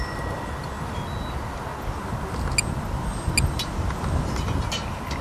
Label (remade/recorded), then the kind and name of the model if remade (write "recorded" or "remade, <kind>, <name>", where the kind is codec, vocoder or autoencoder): recorded